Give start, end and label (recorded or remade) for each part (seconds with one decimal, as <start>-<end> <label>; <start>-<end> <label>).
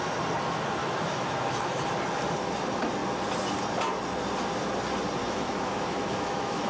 0.0-0.8 recorded; 0.8-1.8 remade; 1.8-5.2 recorded; 5.2-6.7 remade